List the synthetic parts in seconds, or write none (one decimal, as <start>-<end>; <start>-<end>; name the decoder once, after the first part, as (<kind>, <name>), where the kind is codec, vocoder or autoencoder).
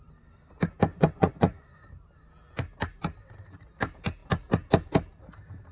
0.9-1.8 (vocoder, Vocos)